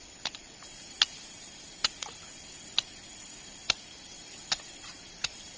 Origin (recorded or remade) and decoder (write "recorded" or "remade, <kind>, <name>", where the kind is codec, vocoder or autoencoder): recorded